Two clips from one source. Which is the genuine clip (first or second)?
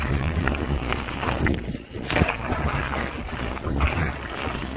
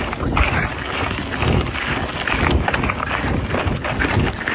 second